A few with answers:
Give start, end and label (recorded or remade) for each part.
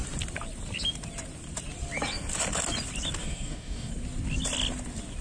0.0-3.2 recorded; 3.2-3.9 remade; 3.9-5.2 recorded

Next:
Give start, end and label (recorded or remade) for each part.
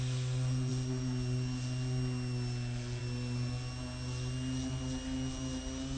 0.0-6.0 recorded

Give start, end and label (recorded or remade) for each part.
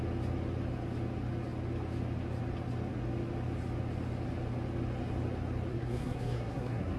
0.0-5.7 recorded; 5.7-7.0 remade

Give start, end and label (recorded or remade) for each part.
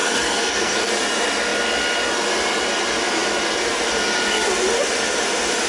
0.0-0.9 remade; 0.9-5.7 recorded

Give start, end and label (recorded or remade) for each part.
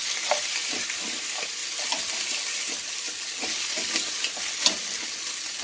0.0-5.6 recorded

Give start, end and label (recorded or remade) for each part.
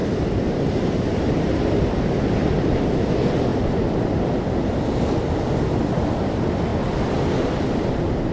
0.0-0.6 remade; 0.6-8.3 recorded